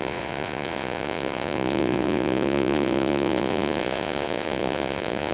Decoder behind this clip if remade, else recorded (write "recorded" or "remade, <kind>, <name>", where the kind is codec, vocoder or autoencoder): remade, vocoder, Vocos